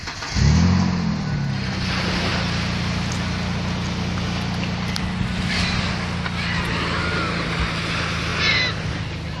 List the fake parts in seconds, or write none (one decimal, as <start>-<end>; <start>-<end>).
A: none